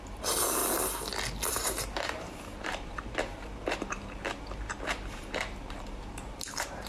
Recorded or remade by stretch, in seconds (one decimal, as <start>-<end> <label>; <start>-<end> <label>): 0.0-0.6 remade; 0.6-1.5 recorded; 1.5-6.9 remade

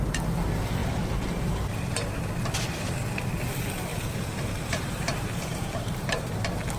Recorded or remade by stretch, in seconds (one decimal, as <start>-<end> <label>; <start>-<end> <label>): 0.0-0.8 recorded; 0.8-1.9 remade; 1.9-3.9 recorded; 3.9-6.3 remade; 6.3-6.8 recorded

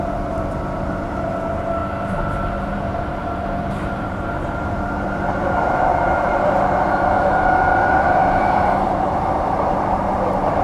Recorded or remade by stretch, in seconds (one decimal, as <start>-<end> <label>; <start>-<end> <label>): 0.0-1.8 remade; 1.8-2.5 recorded; 2.5-10.6 remade

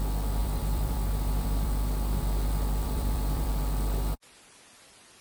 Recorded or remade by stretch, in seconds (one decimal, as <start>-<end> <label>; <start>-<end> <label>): 0.0-0.4 recorded; 0.4-3.5 remade; 3.5-5.2 recorded

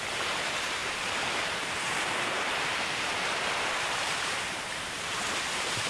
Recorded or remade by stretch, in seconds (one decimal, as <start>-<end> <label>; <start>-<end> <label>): 0.0-5.9 remade

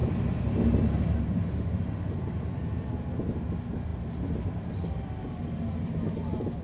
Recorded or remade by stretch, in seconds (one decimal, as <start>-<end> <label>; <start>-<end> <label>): 0.0-6.6 recorded

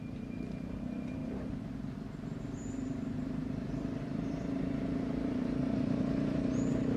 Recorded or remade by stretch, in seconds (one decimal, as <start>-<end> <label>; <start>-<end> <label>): 0.0-7.0 remade

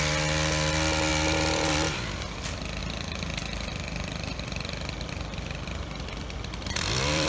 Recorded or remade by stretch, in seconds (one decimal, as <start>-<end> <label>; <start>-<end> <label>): 0.0-7.3 remade